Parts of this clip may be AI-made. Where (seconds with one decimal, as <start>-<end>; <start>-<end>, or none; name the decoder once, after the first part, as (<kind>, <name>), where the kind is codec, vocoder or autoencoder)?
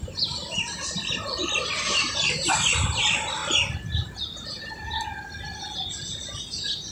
none